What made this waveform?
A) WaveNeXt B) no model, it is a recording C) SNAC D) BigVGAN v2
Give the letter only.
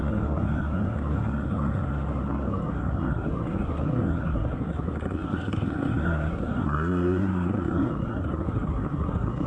C